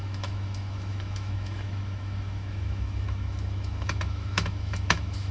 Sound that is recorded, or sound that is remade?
remade